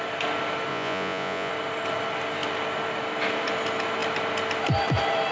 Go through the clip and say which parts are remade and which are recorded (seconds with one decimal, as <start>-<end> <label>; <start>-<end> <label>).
0.0-0.7 recorded; 0.7-1.5 remade; 1.5-5.3 recorded